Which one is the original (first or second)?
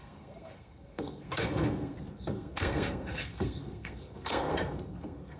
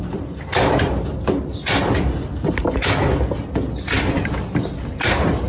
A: second